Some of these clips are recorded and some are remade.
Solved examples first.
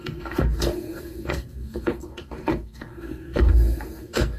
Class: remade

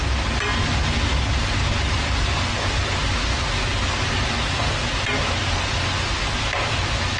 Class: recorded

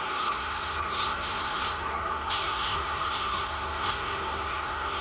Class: remade